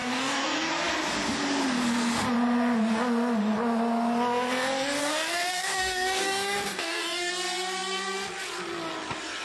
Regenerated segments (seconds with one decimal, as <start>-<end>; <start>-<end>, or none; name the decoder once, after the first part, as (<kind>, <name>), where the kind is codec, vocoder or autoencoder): 0.0-0.7 (codec, DAC); 5.0-7.3